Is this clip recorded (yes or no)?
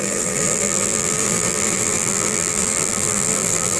no